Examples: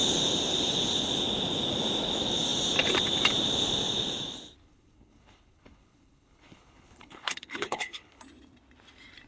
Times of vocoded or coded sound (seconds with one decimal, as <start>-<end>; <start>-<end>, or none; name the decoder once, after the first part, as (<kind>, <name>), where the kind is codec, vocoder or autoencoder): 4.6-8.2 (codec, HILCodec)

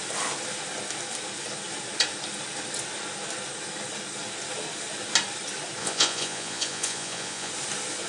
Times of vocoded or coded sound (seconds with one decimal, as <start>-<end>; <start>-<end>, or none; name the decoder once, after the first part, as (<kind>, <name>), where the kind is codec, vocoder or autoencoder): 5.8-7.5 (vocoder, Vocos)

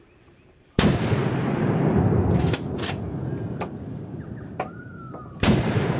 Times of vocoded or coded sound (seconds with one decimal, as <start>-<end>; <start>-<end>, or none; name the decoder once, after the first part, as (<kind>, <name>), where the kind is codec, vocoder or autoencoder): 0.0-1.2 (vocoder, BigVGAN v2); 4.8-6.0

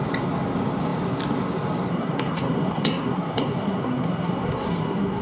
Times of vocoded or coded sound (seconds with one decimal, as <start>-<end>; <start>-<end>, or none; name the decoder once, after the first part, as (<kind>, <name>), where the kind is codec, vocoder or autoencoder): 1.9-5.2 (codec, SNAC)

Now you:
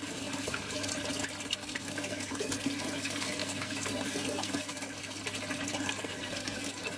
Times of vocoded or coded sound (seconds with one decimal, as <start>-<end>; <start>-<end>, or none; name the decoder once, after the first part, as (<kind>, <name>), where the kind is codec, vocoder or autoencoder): 0.0-0.9 (codec, SNAC); 1.4-5.2; 5.8-7.0

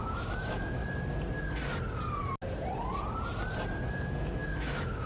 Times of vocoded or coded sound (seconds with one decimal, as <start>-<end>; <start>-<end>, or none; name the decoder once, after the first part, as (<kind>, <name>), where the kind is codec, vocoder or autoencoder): 0.0-0.8 (autoencoder, DAC-VAE); 3.9-5.1

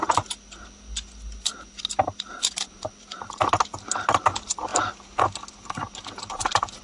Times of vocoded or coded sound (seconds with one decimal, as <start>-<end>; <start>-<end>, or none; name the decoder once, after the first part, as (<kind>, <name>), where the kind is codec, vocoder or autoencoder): none